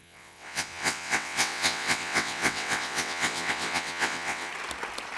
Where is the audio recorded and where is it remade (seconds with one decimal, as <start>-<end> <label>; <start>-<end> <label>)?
0.0-4.5 remade; 4.5-5.2 recorded